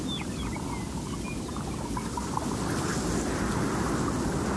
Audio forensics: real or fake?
real